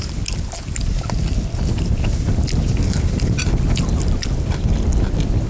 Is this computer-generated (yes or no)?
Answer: no